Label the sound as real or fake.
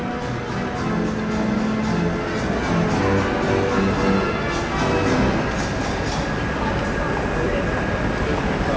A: real